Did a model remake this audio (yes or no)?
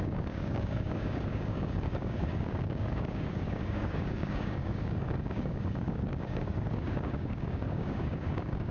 yes